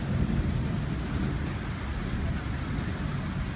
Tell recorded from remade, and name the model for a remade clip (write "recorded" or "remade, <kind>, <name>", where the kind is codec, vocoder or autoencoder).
recorded